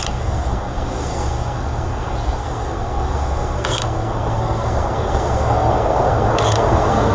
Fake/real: fake